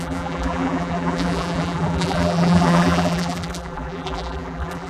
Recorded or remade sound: remade